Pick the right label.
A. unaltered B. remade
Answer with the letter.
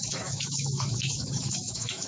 B